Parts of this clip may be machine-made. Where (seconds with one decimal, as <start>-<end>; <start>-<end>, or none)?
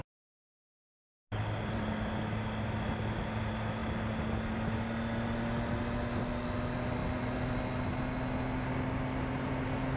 none